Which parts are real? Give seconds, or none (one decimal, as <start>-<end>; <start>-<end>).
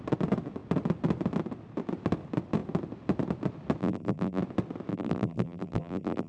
0.0-3.8; 4.4-4.9